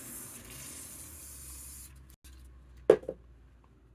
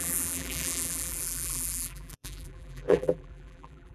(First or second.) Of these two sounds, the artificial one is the second